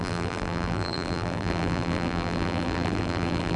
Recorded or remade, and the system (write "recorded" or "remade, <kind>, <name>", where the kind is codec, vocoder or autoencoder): remade, vocoder, BigVGAN v2